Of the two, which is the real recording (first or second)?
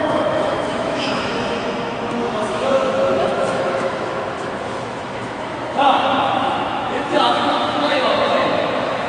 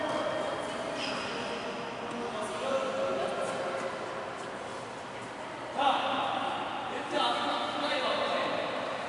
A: second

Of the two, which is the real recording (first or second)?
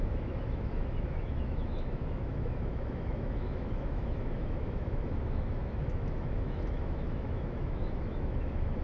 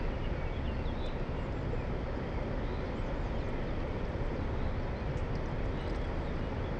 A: second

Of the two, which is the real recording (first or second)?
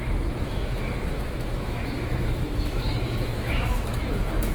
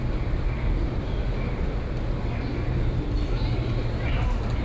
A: second